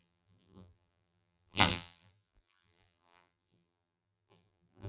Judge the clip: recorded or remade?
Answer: remade